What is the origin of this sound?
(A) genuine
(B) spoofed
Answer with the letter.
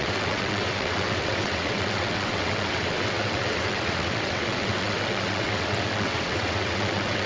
B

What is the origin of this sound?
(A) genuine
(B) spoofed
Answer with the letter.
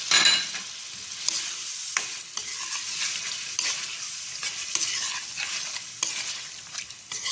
A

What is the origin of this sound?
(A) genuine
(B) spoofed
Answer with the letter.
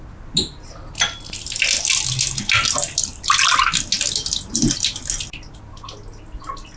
A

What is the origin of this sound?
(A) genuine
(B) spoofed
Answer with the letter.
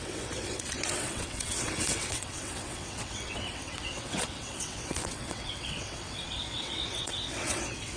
B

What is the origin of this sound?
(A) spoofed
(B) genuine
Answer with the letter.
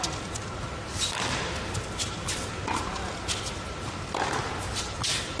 B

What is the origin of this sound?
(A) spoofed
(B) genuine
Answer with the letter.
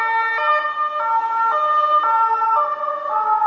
B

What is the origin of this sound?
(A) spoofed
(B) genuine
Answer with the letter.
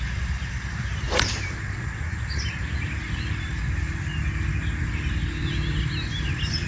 B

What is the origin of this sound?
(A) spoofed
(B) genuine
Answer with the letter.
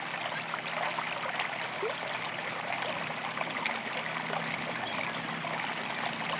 B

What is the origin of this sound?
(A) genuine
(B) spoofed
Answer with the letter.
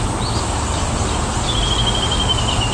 A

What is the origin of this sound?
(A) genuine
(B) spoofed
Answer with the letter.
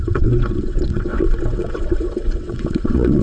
B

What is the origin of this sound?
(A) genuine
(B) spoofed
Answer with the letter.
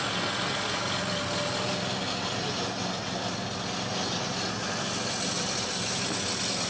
A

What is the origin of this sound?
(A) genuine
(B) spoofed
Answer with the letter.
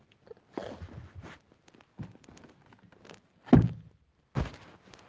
A